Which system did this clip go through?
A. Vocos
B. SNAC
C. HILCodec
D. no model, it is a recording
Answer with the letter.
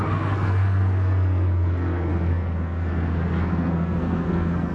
B